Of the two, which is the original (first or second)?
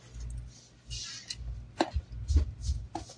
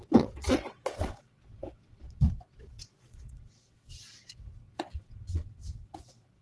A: first